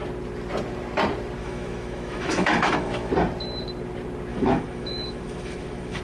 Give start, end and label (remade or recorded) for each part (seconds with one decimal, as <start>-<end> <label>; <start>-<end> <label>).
0.0-1.4 recorded; 1.4-3.1 remade; 3.1-4.3 recorded; 4.3-6.0 remade